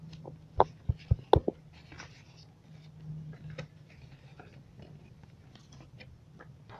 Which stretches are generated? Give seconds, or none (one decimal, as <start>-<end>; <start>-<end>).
none